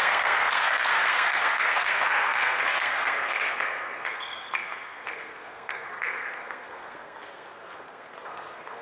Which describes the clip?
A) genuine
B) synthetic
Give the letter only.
B